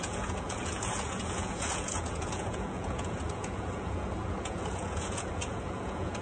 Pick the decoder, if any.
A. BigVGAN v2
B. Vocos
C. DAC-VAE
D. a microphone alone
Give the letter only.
B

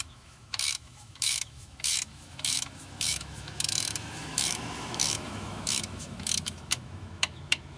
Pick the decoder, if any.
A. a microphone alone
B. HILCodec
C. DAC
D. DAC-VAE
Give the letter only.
D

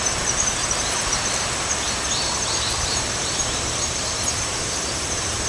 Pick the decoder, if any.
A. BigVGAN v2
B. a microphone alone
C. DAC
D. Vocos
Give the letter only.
A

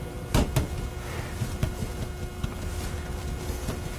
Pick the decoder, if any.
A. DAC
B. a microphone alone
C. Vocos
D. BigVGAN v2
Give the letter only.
B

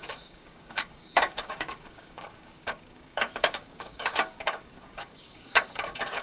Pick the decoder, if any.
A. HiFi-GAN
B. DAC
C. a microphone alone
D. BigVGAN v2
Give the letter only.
B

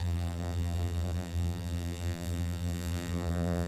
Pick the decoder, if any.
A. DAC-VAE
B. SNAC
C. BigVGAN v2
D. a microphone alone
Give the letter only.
C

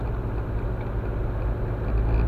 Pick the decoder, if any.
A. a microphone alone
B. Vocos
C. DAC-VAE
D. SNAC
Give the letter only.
A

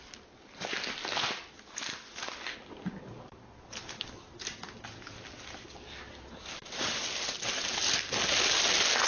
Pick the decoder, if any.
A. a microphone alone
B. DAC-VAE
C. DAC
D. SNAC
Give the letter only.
A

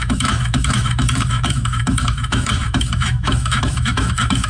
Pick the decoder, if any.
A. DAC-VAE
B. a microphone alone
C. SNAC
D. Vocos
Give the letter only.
A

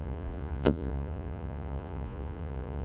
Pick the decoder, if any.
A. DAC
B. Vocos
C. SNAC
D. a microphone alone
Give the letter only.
B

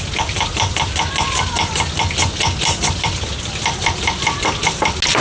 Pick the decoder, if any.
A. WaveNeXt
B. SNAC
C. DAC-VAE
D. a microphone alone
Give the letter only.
D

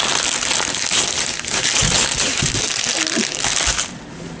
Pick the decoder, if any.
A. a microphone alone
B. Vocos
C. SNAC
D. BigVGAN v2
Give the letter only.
A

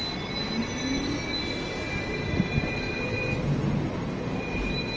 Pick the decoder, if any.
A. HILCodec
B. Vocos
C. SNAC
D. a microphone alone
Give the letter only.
D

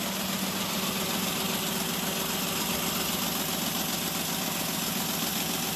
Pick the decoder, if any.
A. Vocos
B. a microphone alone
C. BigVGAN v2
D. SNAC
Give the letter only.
B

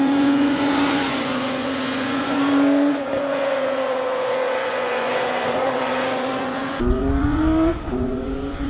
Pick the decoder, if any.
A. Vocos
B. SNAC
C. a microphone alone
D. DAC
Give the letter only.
A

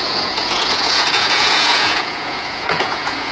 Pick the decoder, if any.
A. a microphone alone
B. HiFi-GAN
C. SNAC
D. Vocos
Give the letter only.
D